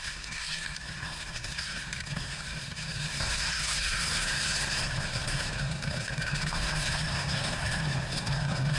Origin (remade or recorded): remade